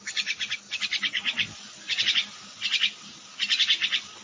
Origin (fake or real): real